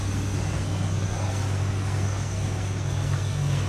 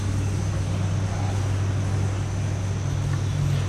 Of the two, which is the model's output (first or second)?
first